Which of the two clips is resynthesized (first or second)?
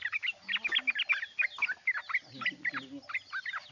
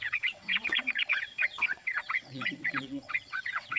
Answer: second